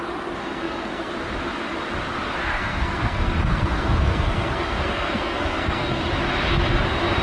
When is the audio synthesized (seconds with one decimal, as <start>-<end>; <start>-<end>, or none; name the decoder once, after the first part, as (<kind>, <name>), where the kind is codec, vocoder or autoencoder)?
0.4-1.1 (codec, SNAC); 2.5-6.0